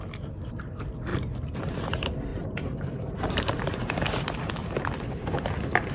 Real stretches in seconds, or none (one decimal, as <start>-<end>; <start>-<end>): 0.0-1.1; 1.7-2.3; 3.8-4.6; 5.2-5.9